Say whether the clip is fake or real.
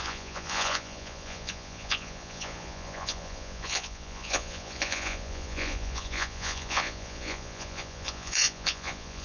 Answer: fake